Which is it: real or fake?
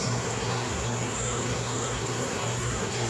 fake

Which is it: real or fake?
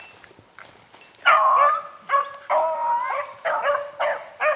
real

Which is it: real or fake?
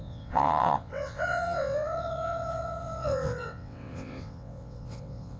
fake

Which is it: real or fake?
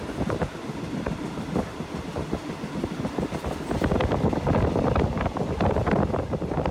real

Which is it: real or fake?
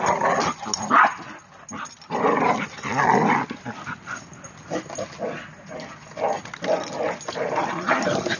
real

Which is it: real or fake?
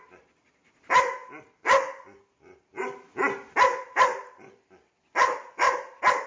real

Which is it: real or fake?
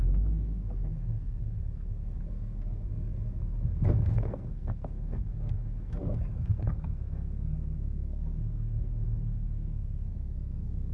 fake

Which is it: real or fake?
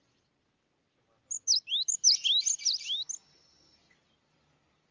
real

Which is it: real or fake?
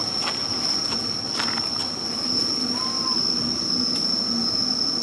real